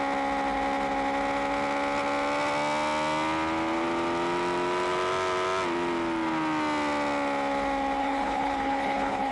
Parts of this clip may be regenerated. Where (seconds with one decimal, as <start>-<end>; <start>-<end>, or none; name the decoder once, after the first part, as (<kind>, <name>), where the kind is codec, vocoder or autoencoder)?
8.0-9.3 (codec, HILCodec)